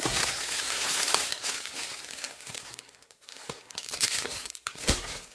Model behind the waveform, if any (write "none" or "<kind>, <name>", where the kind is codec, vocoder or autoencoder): codec, SNAC